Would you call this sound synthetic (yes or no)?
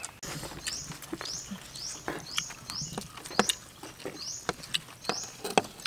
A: no